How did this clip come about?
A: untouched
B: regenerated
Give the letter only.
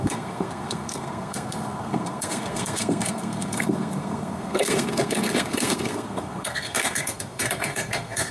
B